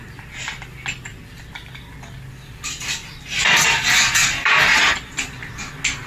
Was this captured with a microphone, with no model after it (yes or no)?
yes